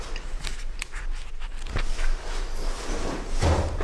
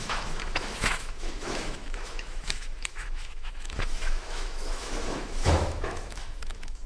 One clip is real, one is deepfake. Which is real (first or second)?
first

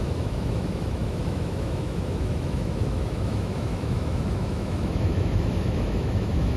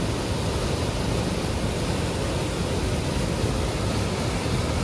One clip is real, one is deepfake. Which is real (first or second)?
second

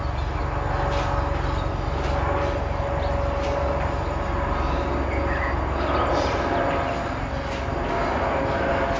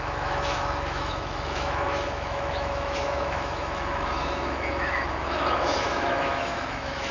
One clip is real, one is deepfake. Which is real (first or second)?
first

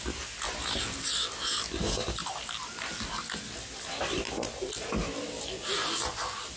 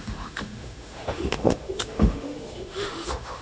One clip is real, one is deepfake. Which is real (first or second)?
first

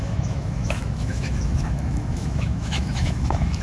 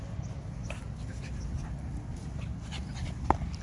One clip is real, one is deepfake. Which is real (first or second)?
second